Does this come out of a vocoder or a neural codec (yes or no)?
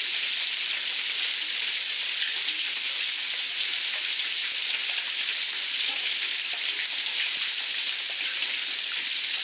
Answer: no